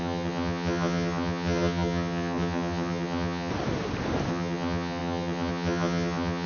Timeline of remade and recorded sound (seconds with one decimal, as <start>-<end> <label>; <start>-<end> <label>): 0.0-3.5 remade; 3.5-4.3 recorded; 4.3-6.5 remade